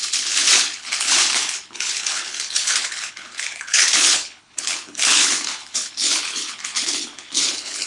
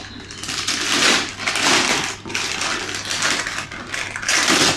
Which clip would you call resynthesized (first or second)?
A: first